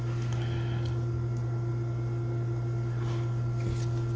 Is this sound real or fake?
real